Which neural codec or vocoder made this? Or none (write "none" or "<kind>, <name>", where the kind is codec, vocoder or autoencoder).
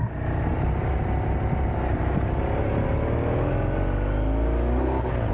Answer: none